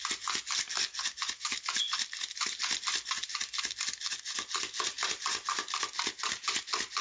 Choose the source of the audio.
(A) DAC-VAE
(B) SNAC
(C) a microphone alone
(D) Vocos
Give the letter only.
C